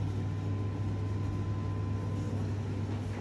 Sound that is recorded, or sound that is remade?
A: recorded